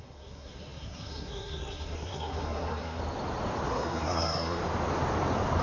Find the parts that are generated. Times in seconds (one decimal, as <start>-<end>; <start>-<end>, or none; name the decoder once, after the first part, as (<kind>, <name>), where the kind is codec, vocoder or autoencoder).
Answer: 0.0-3.0 (codec, SNAC); 3.7-4.6